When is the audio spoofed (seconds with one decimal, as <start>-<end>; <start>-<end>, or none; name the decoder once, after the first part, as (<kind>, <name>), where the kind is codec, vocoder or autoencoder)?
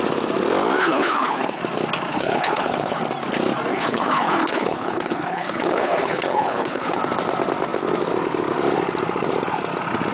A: 0.8-1.6 (codec, HILCodec); 2.1-3.0; 3.7-7.0